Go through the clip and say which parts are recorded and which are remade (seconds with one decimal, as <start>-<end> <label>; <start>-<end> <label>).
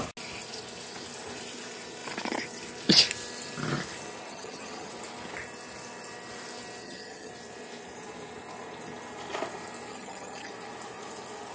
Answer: 0.0-4.3 recorded; 4.3-4.9 remade; 4.9-6.8 recorded; 6.8-7.3 remade; 7.3-9.9 recorded; 9.9-10.5 remade; 10.5-11.5 recorded